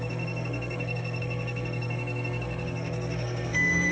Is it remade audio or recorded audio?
remade